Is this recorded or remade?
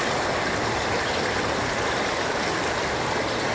recorded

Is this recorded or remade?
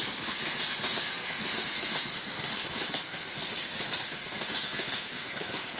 remade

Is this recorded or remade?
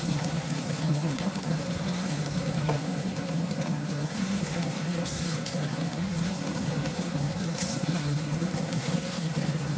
remade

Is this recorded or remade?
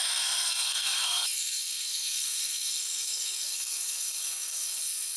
remade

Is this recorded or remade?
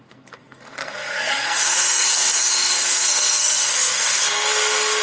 remade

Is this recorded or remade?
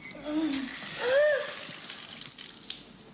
recorded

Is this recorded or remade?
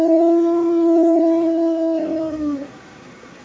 remade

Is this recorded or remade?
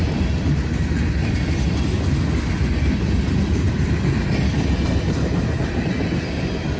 recorded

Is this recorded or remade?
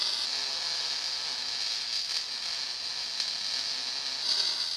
recorded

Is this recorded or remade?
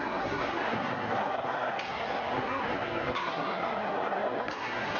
remade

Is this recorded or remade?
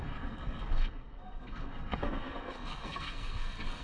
remade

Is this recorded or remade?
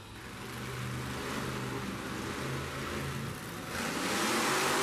recorded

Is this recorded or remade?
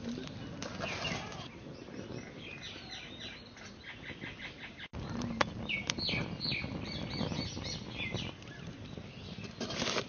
recorded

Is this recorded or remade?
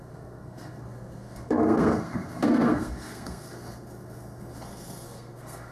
remade